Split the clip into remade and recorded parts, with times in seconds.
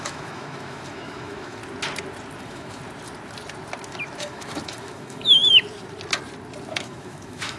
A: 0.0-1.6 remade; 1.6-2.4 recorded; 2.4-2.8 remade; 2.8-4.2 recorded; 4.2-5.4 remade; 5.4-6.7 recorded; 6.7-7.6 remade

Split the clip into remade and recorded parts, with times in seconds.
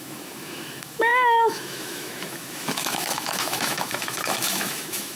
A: 0.0-5.2 remade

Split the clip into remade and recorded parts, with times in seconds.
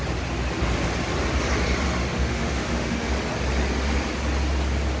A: 0.0-2.0 recorded; 2.0-3.1 remade; 3.1-5.0 recorded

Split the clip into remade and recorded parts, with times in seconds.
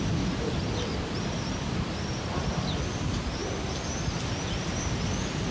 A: 0.0-5.5 recorded